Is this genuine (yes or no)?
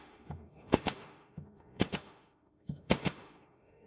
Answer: no